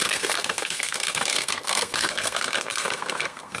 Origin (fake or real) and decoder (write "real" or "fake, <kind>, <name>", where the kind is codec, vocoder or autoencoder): fake, codec, SNAC